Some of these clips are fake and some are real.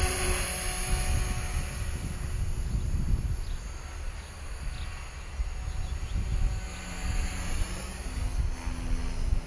real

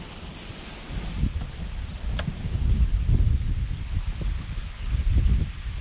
real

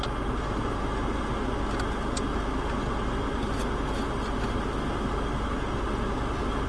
real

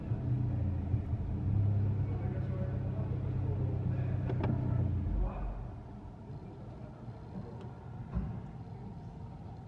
real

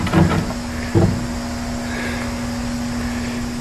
real